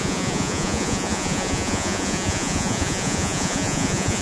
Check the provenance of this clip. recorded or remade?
remade